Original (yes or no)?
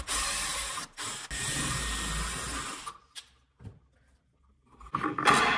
yes